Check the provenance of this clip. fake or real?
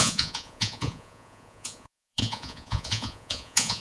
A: fake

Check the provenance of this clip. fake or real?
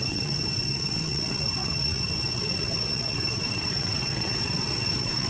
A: fake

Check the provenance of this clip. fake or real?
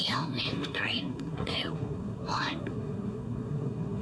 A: fake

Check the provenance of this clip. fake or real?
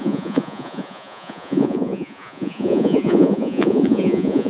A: fake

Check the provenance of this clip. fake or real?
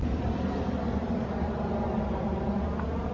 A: real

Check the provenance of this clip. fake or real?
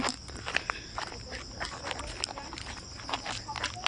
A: real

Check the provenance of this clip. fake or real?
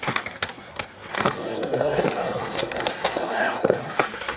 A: fake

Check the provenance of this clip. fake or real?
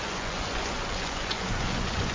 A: fake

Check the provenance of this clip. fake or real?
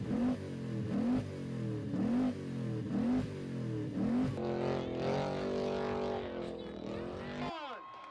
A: real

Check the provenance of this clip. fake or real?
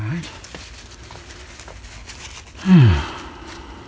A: real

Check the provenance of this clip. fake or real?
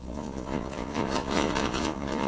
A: fake